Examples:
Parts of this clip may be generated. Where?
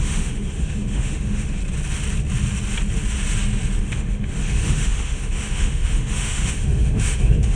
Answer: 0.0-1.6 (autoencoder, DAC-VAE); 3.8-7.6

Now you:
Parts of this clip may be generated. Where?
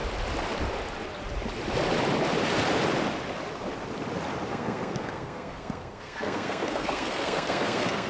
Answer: 4.5-8.1 (codec, SNAC)